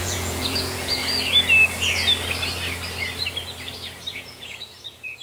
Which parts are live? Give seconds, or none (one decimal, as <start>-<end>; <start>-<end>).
1.0-4.1